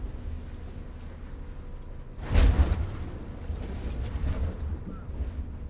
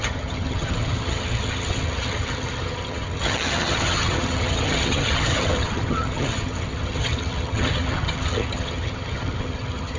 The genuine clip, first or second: first